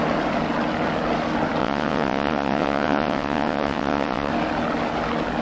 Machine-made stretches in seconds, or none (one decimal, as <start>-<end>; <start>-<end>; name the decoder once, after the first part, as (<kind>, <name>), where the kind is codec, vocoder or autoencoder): 1.6-4.3 (vocoder, WaveNeXt)